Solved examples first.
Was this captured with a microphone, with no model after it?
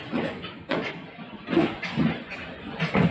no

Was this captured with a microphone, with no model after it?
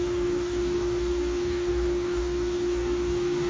no